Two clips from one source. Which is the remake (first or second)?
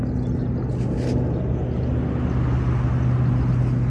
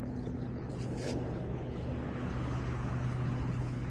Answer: second